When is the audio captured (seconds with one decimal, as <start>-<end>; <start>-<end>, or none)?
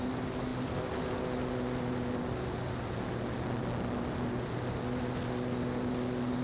0.0-6.4